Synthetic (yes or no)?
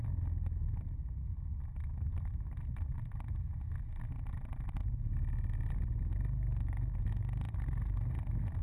no